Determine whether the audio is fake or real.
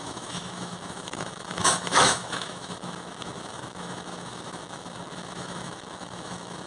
fake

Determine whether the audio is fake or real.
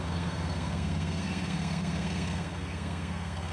fake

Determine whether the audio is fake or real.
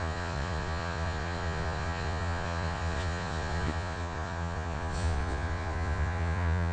fake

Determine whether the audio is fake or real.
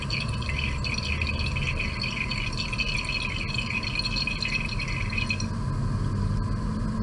real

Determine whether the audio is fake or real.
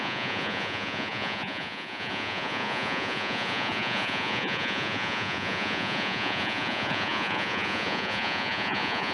fake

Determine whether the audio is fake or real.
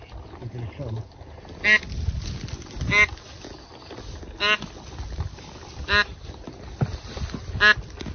real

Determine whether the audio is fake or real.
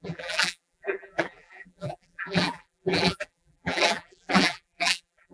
fake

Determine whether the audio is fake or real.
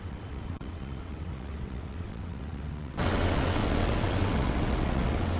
fake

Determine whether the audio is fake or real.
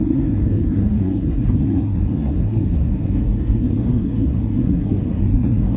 fake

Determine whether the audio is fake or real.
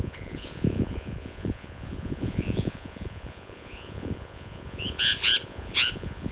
fake